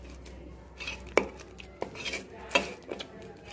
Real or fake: real